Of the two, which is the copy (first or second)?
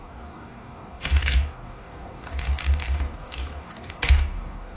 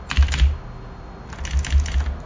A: first